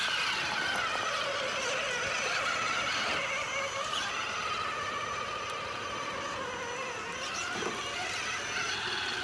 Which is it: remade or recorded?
recorded